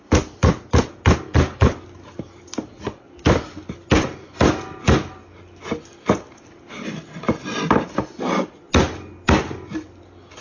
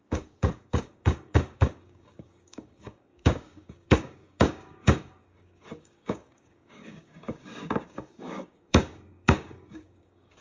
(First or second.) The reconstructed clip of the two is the second